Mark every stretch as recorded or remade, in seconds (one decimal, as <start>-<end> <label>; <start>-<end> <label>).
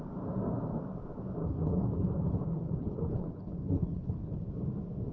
0.0-1.4 recorded; 1.4-4.5 remade; 4.5-5.1 recorded